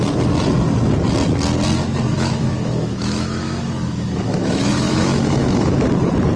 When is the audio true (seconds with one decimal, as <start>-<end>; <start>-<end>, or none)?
0.0-2.1; 5.9-6.4